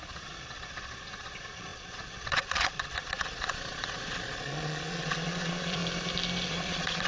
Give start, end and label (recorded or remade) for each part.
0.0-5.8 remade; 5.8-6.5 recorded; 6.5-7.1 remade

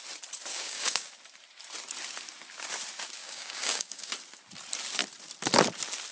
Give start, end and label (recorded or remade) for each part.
0.0-0.5 recorded; 0.5-1.1 remade; 1.1-3.2 recorded; 3.2-4.1 remade; 4.1-6.1 recorded

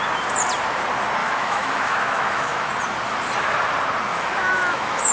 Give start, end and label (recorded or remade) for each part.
0.0-1.2 recorded; 1.2-2.7 remade; 2.7-4.1 recorded; 4.1-5.1 remade

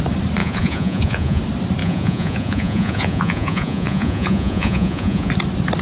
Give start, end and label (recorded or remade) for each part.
0.0-0.4 recorded; 0.4-1.4 remade; 1.4-1.8 recorded; 1.8-5.3 remade; 5.3-5.8 recorded

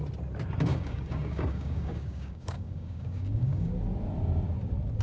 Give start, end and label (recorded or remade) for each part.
0.0-0.7 recorded; 0.7-3.7 remade; 3.7-5.0 recorded

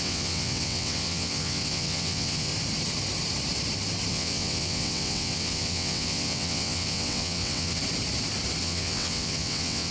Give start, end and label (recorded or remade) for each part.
0.0-2.5 remade; 2.5-4.1 recorded; 4.1-7.8 remade; 7.8-8.6 recorded; 8.6-9.9 remade

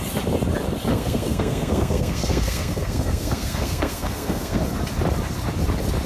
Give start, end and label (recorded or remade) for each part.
0.0-0.9 recorded; 0.9-4.6 remade; 4.6-6.1 recorded

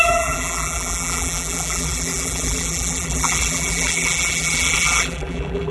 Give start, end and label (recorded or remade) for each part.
0.0-5.7 remade